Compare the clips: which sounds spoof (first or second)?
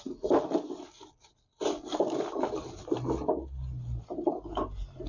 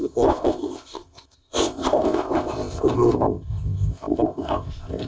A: second